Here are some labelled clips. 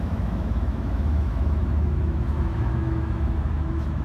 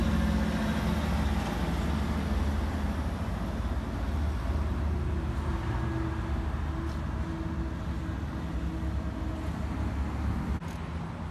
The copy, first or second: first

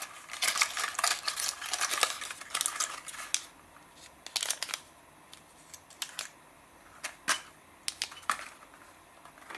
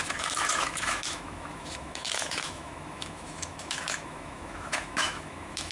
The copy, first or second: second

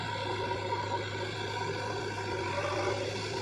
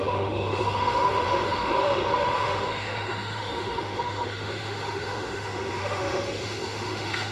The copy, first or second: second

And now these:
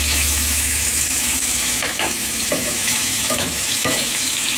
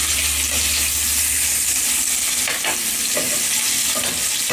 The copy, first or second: first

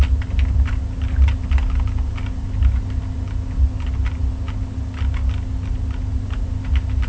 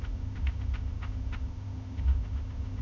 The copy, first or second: second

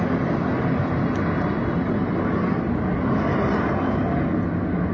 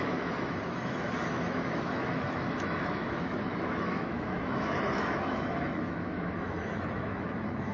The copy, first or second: second